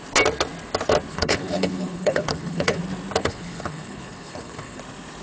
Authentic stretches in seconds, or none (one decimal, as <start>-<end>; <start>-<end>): 0.0-1.1; 2.8-3.2; 4.8-5.2